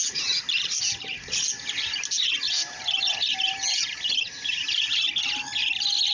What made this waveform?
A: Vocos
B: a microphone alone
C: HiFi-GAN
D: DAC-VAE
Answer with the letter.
B